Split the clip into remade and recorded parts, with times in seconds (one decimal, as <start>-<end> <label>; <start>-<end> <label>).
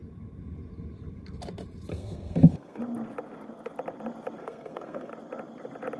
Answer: 0.0-1.9 recorded; 1.9-2.8 remade; 2.8-4.4 recorded; 4.4-5.1 remade; 5.1-6.0 recorded